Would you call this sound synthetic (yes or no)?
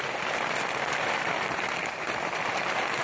no